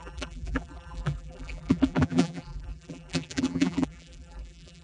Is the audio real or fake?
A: fake